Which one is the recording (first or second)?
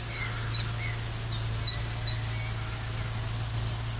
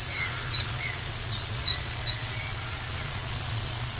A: first